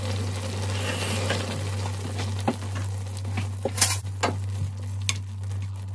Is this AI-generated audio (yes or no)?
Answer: no